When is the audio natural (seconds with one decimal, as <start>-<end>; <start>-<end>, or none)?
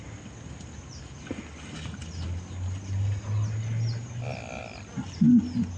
0.0-5.8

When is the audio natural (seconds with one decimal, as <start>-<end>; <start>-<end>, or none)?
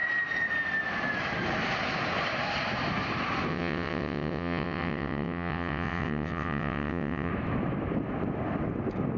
0.0-3.5; 7.3-9.2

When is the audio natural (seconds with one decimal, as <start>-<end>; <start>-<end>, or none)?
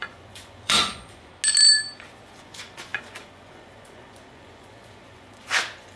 1.3-2.0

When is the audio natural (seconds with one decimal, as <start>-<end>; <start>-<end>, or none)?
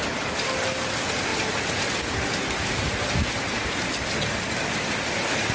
0.0-5.5